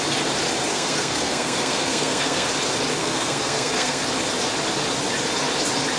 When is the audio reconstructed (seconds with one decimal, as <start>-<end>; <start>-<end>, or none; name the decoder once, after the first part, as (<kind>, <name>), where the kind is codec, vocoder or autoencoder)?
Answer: 0.7-2.5 (codec, SNAC); 3.0-4.0